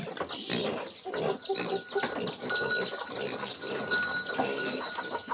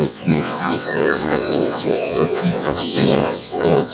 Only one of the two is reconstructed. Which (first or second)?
second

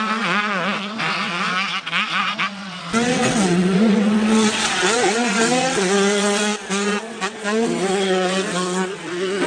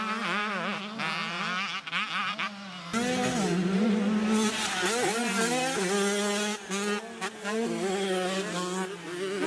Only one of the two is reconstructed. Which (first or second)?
first